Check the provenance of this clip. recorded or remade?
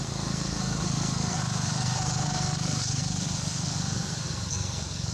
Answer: remade